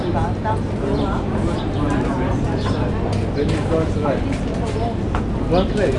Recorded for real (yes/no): yes